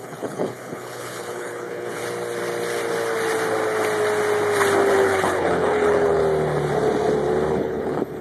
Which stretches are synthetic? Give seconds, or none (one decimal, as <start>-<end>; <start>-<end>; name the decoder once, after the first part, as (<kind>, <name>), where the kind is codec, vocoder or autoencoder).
0.0-2.0 (codec, HILCodec); 4.9-6.2; 7.5-8.2